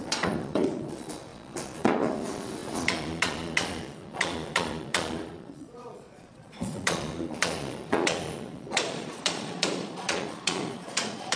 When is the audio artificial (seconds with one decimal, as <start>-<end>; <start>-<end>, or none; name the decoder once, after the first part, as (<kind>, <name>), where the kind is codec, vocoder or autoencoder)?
0.0-11.4 (vocoder, Vocos)